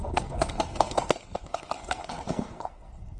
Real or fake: fake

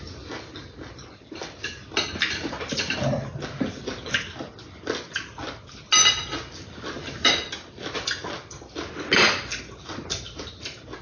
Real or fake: real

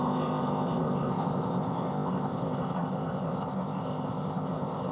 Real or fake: fake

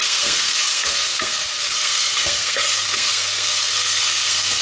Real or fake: fake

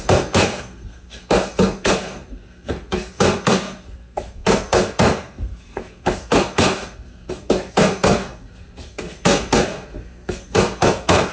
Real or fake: fake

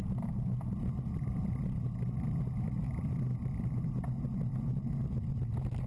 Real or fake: real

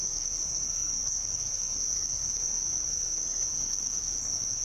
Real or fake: fake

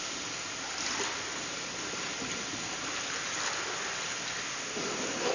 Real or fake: real